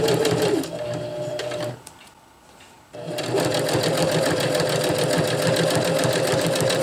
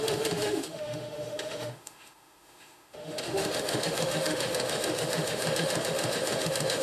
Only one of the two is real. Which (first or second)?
first